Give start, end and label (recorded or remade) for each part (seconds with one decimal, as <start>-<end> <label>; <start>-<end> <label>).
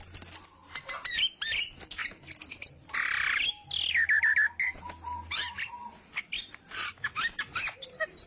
0.0-0.6 recorded; 0.6-1.3 remade; 1.3-8.3 recorded